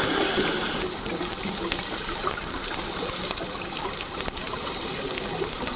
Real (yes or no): no